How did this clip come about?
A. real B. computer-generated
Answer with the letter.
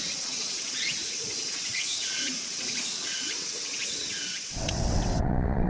B